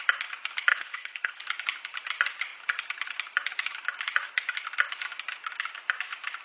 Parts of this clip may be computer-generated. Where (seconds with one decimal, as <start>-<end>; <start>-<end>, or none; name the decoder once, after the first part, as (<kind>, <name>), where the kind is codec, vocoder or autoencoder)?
0.7-1.4 (codec, HILCodec)